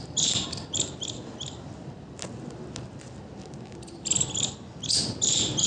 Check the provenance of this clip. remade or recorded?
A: recorded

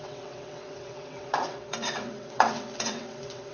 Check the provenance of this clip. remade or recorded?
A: remade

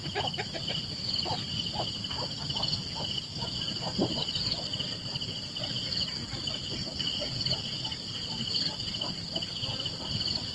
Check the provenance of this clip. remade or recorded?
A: recorded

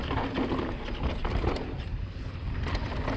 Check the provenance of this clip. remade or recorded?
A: recorded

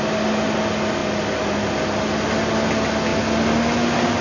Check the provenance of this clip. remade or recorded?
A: recorded